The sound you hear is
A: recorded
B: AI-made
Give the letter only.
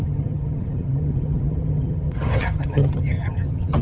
B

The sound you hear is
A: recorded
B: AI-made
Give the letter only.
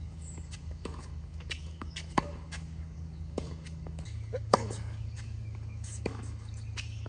B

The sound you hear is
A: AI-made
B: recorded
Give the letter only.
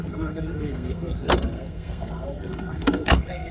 A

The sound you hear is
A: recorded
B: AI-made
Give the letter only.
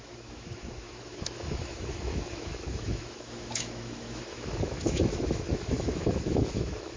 B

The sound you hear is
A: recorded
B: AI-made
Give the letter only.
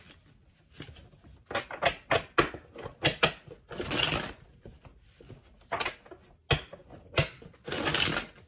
A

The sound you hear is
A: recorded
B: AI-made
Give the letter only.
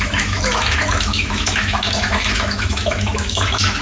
B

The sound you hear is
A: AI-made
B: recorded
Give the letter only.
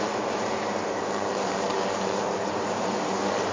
A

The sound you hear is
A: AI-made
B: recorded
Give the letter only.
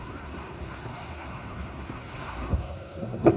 A